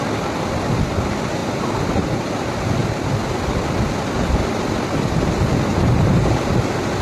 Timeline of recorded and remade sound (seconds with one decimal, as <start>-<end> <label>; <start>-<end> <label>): 0.0-1.4 recorded; 1.4-2.3 remade; 2.3-5.7 recorded; 5.7-6.5 remade; 6.5-7.0 recorded